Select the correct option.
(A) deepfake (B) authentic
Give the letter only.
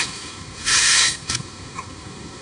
A